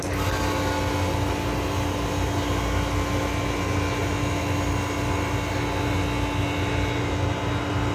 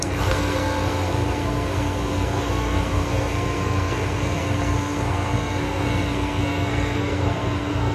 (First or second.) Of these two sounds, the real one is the first